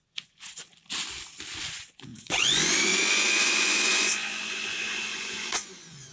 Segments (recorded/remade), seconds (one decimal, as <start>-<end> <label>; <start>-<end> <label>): 0.0-0.7 remade; 0.7-1.6 recorded; 1.6-6.1 remade